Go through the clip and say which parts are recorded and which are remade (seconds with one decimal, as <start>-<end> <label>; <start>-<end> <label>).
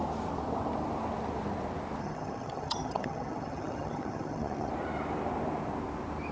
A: 0.0-2.0 recorded; 2.0-4.7 remade; 4.7-6.3 recorded